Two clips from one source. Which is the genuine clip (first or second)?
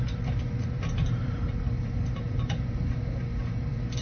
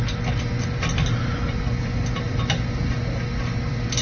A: second